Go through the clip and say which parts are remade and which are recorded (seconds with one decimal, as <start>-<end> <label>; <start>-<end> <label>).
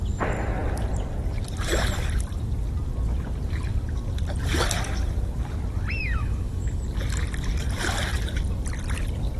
0.0-6.0 recorded; 6.0-6.8 remade; 6.8-9.4 recorded